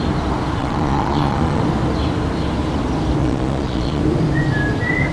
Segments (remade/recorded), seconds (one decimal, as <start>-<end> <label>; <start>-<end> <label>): 0.0-0.6 recorded; 0.6-1.6 remade; 1.6-3.2 recorded; 3.2-4.0 remade; 4.0-5.1 recorded